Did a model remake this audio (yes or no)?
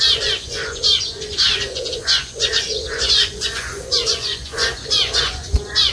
yes